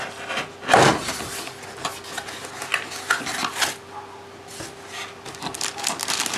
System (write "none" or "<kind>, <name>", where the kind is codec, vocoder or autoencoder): none